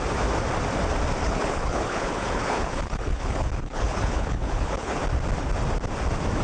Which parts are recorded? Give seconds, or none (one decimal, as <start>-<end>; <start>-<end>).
0.0-1.2; 5.0-6.4